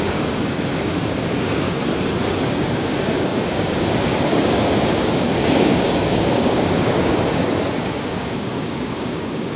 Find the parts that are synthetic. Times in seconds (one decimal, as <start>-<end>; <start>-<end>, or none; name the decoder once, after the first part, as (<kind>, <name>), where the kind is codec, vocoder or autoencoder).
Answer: 0.0-1.8 (codec, DAC); 2.5-9.6